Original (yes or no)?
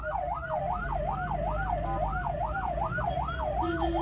yes